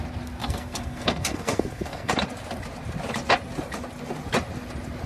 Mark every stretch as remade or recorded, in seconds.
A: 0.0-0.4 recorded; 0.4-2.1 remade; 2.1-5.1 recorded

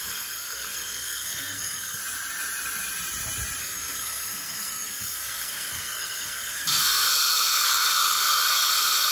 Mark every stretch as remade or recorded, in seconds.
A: 0.0-2.0 remade; 2.0-3.6 recorded; 3.6-9.1 remade

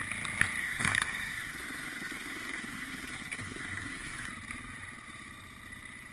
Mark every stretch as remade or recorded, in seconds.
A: 0.0-0.6 recorded; 0.6-4.3 remade; 4.3-6.1 recorded

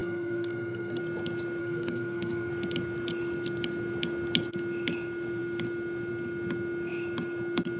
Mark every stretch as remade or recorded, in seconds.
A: 0.0-1.0 remade; 1.0-1.6 recorded; 1.6-2.5 remade; 2.5-7.8 recorded

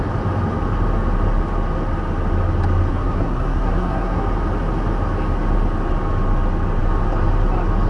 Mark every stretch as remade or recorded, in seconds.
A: 0.0-2.9 recorded; 2.9-4.2 remade; 4.2-7.9 recorded

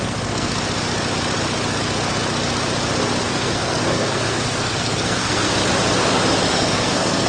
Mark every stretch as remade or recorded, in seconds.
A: 0.0-0.5 remade; 0.5-3.2 recorded; 3.2-5.6 remade; 5.6-6.5 recorded; 6.5-7.3 remade

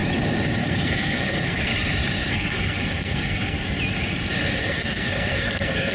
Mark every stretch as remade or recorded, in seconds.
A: 0.0-0.6 recorded; 0.6-1.7 remade; 1.7-2.3 recorded; 2.3-3.6 remade; 3.6-4.6 recorded; 4.6-5.9 remade